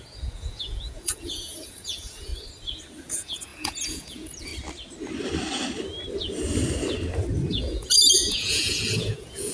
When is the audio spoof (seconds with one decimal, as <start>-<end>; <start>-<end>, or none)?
0.0-2.3; 3.1-4.5; 7.5-9.5